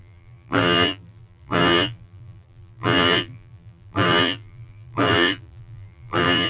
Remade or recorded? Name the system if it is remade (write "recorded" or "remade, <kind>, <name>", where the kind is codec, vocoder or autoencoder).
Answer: remade, vocoder, BigVGAN v2